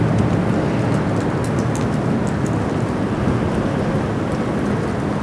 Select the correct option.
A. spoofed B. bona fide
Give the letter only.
B